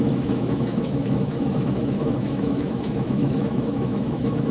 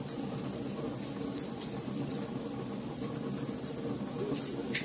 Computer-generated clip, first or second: first